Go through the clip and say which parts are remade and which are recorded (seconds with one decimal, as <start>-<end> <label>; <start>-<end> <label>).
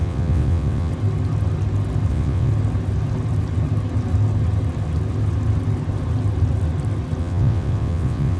0.0-0.9 remade; 0.9-2.1 recorded; 2.1-2.5 remade; 2.5-7.2 recorded; 7.2-8.4 remade